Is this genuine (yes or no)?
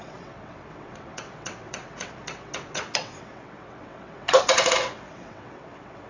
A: no